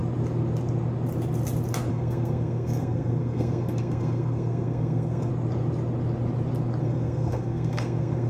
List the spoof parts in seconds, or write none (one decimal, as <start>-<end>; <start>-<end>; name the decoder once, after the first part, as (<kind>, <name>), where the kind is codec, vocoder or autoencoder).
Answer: 1.9-5.3 (codec, SNAC); 6.8-8.3